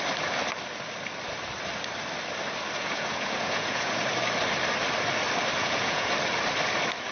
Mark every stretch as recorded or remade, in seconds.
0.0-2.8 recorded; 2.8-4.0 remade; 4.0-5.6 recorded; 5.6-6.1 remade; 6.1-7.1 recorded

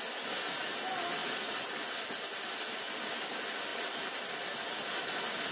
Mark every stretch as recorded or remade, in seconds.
0.0-5.5 recorded